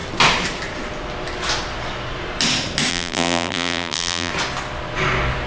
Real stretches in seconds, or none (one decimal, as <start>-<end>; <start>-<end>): 0.0-2.9; 4.3-5.5